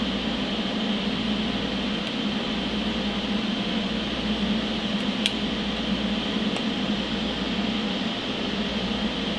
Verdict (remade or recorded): recorded